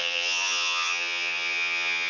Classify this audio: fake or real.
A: fake